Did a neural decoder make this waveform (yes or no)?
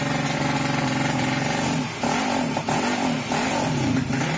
no